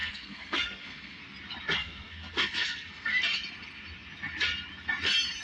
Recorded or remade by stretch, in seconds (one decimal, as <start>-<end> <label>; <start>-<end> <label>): 0.0-1.2 remade; 1.2-1.8 recorded; 1.8-3.2 remade; 3.2-5.4 recorded